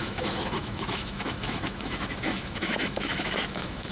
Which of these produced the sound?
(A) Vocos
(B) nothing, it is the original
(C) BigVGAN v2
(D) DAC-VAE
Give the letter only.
D